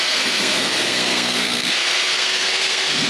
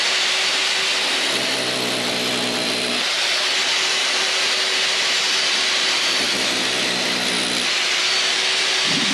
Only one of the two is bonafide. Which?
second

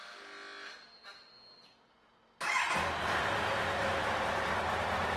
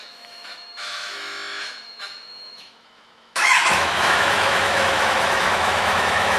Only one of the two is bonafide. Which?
first